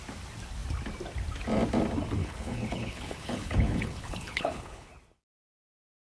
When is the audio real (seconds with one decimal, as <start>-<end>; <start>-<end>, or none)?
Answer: 0.0-2.2; 4.9-6.0